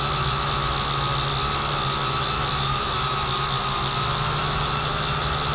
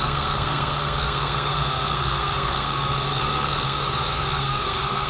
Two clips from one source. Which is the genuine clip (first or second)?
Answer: first